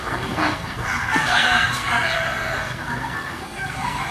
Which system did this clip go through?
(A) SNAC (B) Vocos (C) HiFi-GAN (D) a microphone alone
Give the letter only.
A